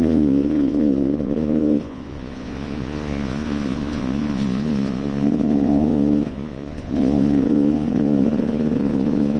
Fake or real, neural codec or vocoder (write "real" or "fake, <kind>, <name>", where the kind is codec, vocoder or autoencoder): fake, vocoder, Vocos